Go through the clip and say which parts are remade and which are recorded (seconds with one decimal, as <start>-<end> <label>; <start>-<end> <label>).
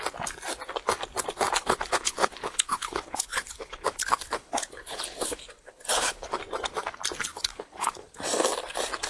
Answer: 0.0-1.6 recorded; 1.6-6.4 remade; 6.4-7.3 recorded; 7.3-8.2 remade; 8.2-9.1 recorded